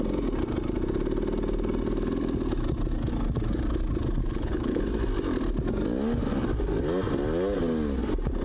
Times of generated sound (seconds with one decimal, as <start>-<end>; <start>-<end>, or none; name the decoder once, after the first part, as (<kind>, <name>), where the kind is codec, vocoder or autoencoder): 4.2-4.8 (codec, HILCodec)